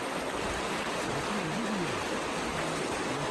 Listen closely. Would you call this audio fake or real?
real